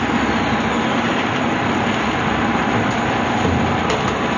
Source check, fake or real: real